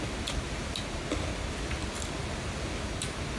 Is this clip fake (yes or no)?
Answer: no